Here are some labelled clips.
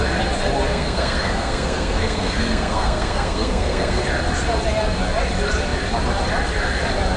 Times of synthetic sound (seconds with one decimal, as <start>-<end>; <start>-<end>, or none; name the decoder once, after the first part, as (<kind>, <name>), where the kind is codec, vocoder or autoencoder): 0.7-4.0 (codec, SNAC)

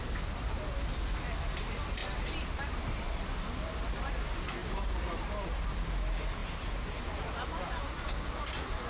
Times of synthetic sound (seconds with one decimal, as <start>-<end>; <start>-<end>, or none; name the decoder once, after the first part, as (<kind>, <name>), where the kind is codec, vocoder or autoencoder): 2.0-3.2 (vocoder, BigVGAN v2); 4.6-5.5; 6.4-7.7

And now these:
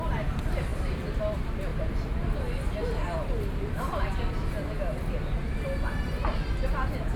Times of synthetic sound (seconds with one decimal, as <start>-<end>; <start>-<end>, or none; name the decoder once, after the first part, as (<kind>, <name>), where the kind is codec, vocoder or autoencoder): none